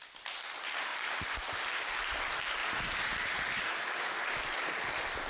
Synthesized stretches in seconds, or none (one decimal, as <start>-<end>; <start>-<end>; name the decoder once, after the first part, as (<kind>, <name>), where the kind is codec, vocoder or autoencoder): 0.9-1.7 (vocoder, BigVGAN v2); 2.6-4.8